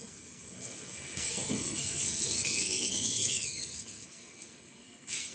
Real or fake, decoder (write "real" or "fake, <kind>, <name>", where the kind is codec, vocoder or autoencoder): fake, codec, SNAC